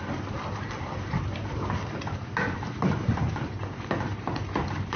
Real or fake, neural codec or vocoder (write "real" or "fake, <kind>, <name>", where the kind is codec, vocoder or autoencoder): fake, vocoder, BigVGAN v2